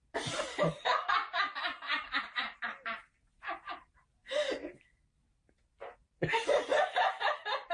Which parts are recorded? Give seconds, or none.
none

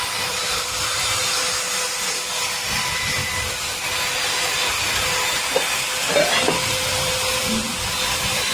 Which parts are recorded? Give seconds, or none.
none

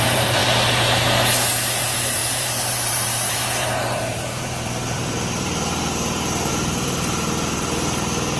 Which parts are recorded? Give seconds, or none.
0.4-1.8

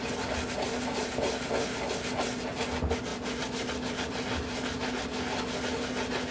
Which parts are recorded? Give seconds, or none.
0.0-6.3

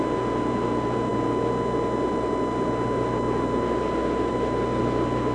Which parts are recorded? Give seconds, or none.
0.0-5.3

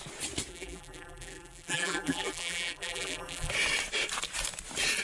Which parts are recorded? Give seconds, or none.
0.0-0.5; 3.5-5.0

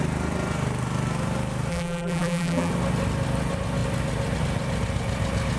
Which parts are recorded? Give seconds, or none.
0.0-1.7; 2.7-5.6